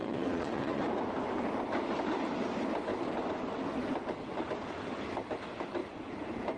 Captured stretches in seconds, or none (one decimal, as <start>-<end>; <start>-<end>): 0.8-6.6